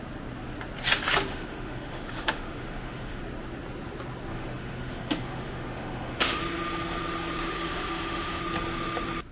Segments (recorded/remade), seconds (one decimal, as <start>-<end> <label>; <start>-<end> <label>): 0.0-1.3 recorded; 1.3-3.2 remade; 3.2-4.3 recorded; 4.3-6.4 remade; 6.4-7.4 recorded; 7.4-8.4 remade; 8.4-9.3 recorded